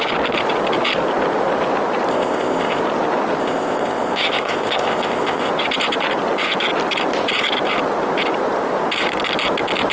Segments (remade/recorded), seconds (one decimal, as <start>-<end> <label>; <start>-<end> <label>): 0.0-2.1 recorded; 2.1-2.8 remade; 2.8-3.4 recorded; 3.4-5.5 remade; 5.5-9.9 recorded